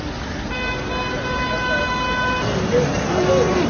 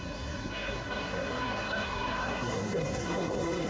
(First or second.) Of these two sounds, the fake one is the second